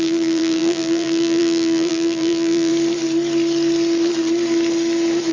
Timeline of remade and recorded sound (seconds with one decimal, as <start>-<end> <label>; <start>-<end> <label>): 0.0-2.7 remade; 2.7-5.3 recorded